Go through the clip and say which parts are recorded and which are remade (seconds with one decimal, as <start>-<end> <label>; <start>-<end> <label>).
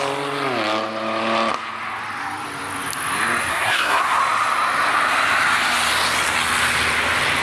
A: 0.0-3.5 recorded; 3.5-4.2 remade; 4.2-7.4 recorded